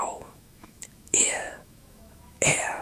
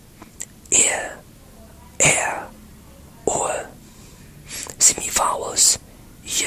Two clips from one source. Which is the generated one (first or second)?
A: first